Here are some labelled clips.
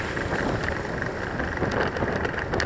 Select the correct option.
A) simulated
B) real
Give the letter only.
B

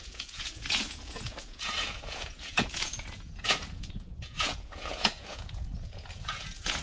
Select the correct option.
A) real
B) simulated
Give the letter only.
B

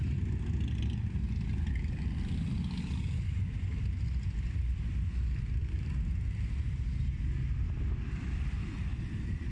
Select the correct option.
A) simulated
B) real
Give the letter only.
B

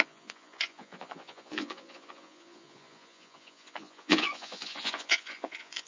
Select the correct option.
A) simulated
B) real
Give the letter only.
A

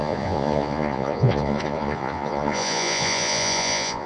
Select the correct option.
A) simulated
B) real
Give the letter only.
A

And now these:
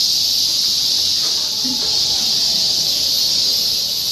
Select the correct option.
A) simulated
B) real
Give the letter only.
B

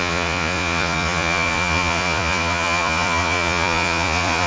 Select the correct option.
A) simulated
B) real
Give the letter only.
A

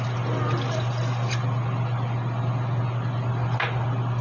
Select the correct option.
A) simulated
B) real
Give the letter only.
B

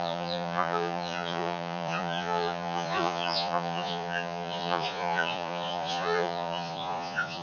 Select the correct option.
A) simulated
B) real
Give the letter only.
A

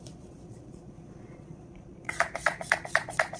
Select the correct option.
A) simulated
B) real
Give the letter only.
A